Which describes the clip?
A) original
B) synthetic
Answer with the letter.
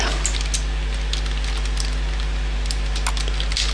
A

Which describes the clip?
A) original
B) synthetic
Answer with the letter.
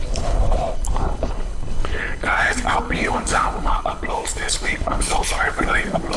B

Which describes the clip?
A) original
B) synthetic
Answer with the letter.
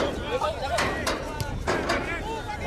A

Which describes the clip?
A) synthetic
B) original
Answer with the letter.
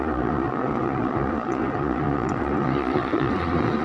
A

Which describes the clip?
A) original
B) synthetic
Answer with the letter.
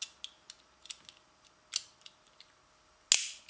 A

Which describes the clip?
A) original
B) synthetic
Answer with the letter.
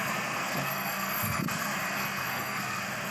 B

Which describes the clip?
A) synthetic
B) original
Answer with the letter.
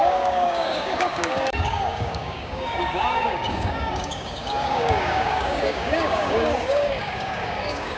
A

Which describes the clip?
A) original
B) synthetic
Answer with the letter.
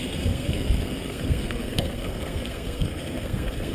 B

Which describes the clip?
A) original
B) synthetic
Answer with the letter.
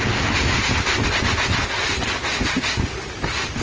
A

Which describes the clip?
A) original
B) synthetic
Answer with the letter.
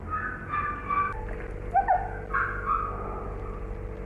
A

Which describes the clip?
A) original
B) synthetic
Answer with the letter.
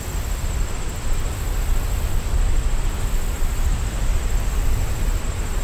A